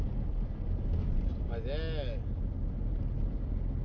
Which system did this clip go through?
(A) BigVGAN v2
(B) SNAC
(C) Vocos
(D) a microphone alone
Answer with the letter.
D